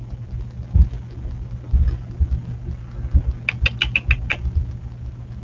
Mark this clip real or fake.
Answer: real